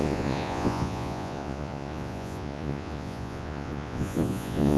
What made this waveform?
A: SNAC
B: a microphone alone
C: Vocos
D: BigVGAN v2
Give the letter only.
C